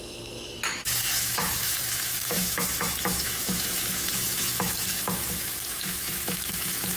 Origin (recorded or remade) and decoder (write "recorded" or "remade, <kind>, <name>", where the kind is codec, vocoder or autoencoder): remade, autoencoder, DAC-VAE